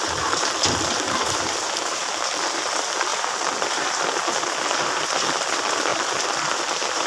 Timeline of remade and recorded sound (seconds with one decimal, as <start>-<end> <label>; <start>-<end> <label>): 0.0-3.1 remade; 3.1-4.6 recorded; 4.6-7.1 remade